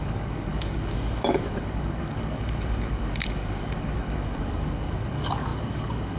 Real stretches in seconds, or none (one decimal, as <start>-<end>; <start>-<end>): none